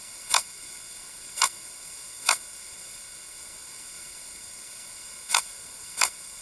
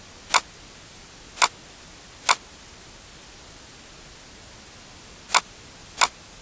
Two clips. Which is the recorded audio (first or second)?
second